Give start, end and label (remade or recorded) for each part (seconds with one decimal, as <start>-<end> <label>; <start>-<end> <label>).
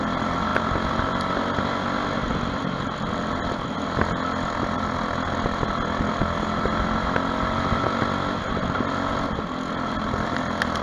0.0-10.8 recorded